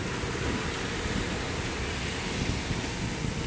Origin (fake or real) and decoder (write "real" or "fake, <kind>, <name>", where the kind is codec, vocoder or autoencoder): real